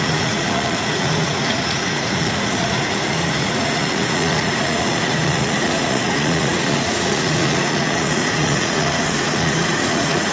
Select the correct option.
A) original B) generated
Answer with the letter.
B